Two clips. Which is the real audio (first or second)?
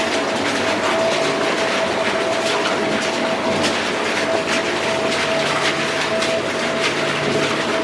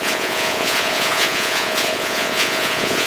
first